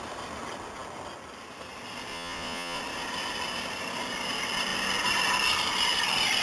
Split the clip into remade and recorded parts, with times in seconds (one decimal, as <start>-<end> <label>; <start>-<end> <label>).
0.0-2.1 recorded; 2.1-2.8 remade; 2.8-6.4 recorded